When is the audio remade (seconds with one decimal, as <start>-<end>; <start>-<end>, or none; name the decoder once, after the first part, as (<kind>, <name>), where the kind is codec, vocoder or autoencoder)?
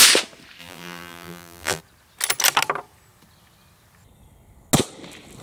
0.6-1.8 (vocoder, BigVGAN v2)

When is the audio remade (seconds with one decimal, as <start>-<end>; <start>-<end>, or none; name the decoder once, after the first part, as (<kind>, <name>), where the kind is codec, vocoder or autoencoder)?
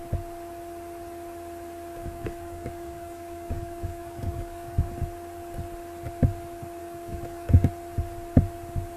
2.0-4.9 (codec, DAC); 6.8-7.7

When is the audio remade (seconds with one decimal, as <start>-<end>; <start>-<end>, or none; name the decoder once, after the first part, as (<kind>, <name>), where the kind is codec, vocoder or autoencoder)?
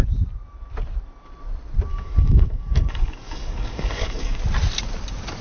1.9-4.4 (codec, DAC)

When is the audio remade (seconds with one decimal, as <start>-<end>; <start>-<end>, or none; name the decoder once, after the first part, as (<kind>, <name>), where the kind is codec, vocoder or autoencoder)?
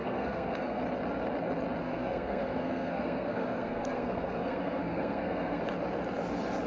0.0-0.8 (codec, SNAC); 1.8-5.6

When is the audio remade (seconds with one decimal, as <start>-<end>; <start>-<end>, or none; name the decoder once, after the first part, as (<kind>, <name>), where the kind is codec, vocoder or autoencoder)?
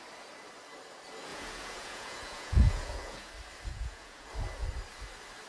1.3-3.3 (vocoder, Vocos); 3.7-4.3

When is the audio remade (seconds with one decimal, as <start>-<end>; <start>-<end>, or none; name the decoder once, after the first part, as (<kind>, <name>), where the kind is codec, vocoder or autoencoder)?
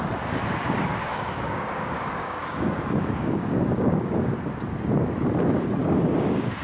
1.0-4.2 (codec, DAC); 5.8-6.6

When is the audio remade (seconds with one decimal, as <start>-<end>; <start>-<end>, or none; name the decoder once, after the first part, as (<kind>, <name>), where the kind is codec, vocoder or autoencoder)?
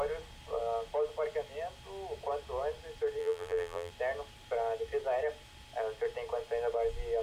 3.2-3.9 (vocoder, BigVGAN v2)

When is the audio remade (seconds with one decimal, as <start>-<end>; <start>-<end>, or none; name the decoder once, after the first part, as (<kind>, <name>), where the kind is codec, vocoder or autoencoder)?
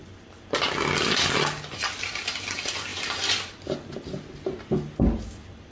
2.9-3.5 (vocoder, BigVGAN v2)